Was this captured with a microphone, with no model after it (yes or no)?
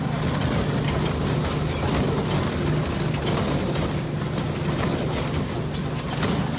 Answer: yes